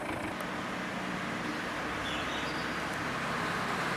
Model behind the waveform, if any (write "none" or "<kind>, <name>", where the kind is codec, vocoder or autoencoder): none